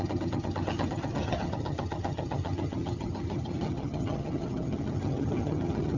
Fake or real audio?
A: fake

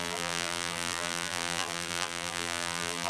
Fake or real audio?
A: fake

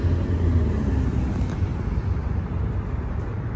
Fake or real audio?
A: real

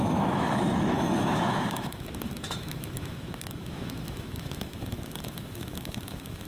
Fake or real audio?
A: fake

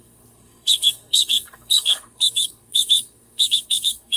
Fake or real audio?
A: fake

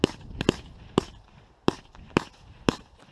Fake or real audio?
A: real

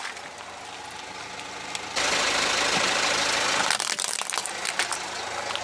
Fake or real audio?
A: real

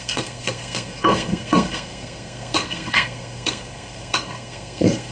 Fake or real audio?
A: fake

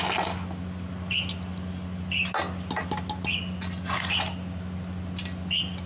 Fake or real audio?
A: real